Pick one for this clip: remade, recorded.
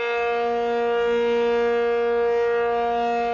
recorded